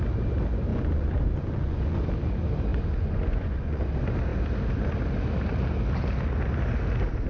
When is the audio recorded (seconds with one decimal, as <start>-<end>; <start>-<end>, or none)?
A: 0.0-0.7; 2.0-2.7; 3.8-7.3